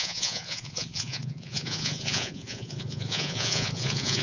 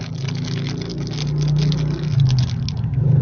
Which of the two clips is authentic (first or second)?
second